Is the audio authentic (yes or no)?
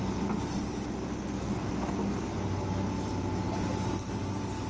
yes